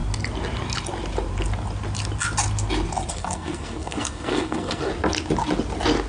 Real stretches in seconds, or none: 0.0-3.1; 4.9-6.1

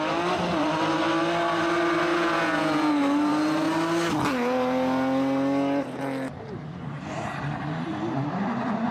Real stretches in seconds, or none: 0.0-2.1; 2.9-8.9

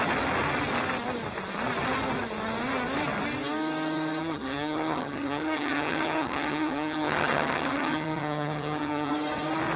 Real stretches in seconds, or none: 0.0-4.2; 9.1-9.8

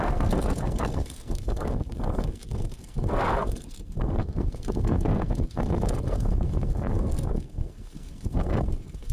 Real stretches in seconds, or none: none

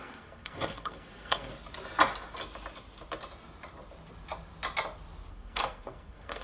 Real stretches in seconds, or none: 1.5-5.3

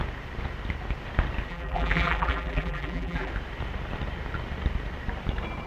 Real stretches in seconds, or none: 0.0-1.5; 3.3-5.7

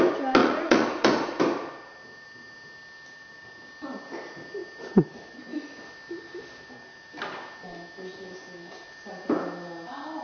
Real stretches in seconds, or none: 0.0-0.4; 1.4-10.2

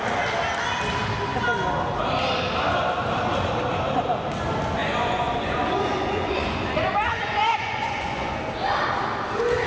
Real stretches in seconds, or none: 0.0-4.8; 8.3-9.7